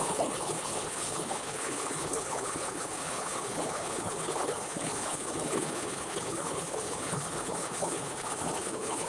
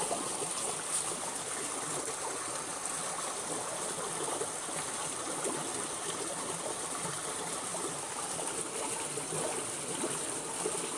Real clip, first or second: second